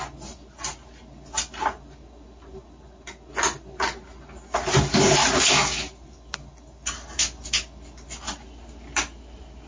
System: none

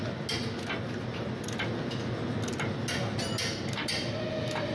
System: none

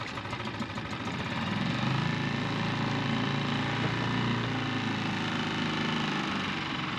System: none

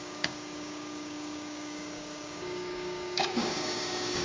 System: codec, DAC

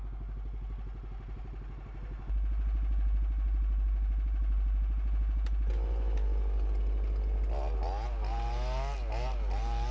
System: none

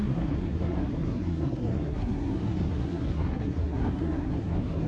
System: codec, SNAC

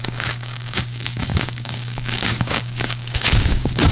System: codec, DAC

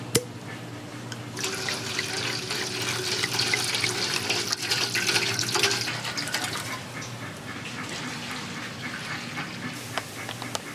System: none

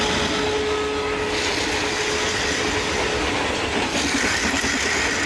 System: none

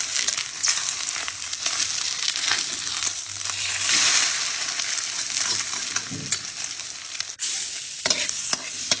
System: none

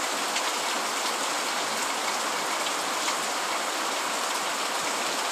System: none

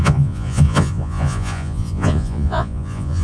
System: vocoder, Vocos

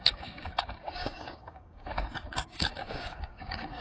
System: codec, DAC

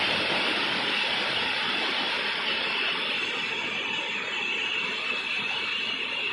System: none